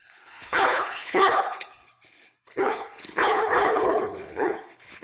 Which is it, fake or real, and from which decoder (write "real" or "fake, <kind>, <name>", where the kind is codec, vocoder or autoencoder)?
fake, codec, HILCodec